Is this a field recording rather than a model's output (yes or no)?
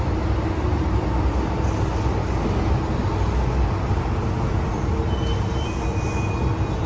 yes